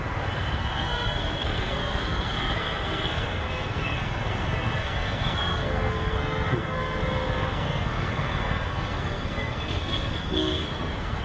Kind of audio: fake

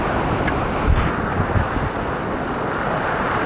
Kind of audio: real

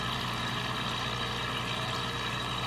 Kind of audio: real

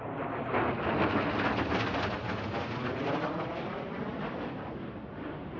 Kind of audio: real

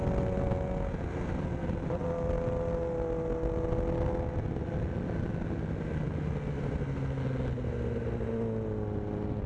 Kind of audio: real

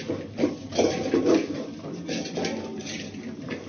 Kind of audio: real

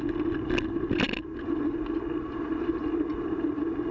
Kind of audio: real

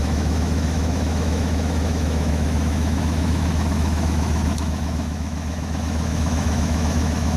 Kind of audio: fake